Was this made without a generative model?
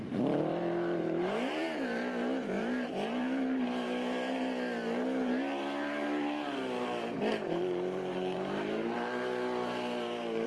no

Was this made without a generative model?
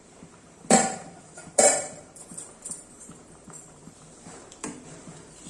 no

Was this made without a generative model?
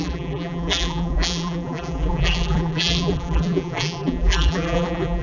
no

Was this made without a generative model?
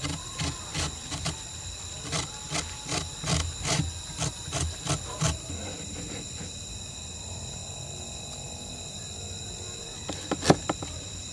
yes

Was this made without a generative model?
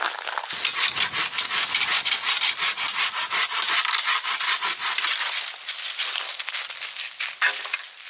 yes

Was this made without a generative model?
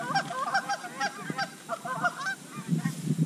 yes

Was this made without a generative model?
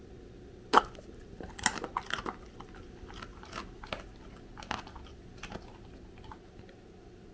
yes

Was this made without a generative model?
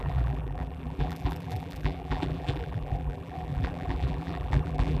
no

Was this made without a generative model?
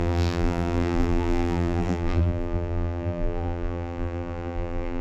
no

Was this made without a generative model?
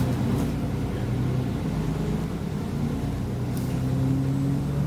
yes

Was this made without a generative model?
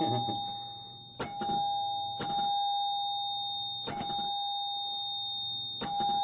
yes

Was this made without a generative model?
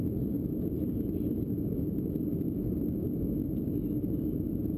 yes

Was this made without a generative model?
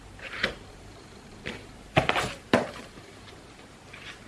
no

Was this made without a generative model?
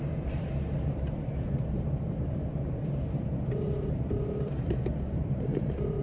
no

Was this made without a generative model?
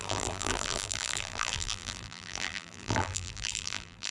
no